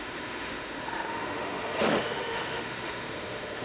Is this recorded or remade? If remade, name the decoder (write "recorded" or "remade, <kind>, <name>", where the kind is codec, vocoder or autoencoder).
remade, autoencoder, DAC-VAE